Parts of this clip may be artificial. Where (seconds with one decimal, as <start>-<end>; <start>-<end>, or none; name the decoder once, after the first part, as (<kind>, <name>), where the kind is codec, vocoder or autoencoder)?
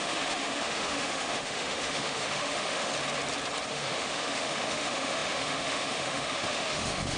0.0-2.9 (autoencoder, DAC-VAE); 3.7-7.2